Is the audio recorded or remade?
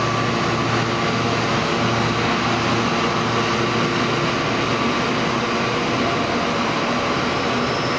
recorded